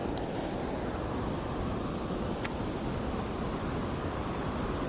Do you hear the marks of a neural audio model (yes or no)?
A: no